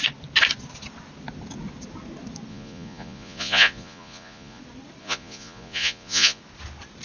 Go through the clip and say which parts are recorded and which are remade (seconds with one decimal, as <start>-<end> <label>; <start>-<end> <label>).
0.0-2.5 recorded; 2.5-4.6 remade; 4.6-5.0 recorded; 5.0-6.4 remade; 6.4-7.0 recorded